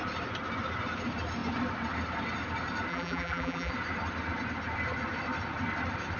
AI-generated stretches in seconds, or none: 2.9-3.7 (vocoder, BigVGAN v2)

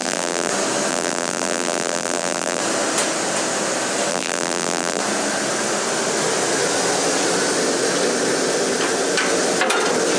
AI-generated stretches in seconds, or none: 0.0-0.5 (vocoder, BigVGAN v2); 0.9-2.6; 4.1-5.0

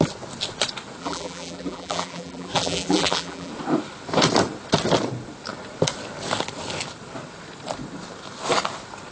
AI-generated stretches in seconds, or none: 1.0-3.5 (vocoder, BigVGAN v2)

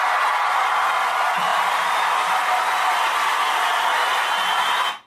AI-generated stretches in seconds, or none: none

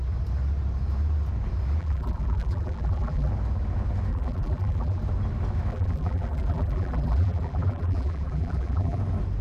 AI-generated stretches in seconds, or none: 1.8-3.3 (vocoder, BigVGAN v2); 4.1-5.0; 5.7-9.0